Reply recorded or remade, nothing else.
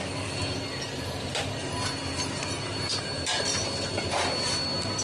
recorded